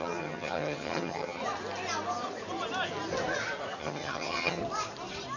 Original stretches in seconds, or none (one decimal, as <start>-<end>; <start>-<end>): 1.4-3.8; 4.6-5.4